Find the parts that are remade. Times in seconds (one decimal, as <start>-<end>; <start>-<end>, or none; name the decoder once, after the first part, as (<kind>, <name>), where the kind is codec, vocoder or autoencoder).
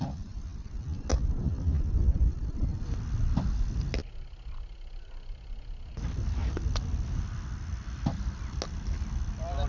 none